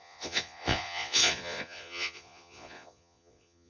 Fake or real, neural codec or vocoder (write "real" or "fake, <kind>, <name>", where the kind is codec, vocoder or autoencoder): fake, vocoder, Vocos